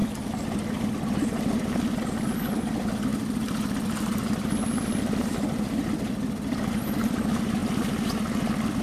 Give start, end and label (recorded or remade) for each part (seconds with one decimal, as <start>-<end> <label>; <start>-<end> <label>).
0.0-7.6 remade; 7.6-8.8 recorded